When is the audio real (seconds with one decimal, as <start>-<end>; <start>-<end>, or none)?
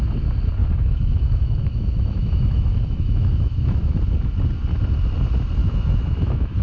0.0-0.6; 4.0-5.6